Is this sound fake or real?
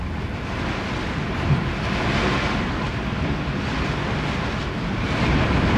real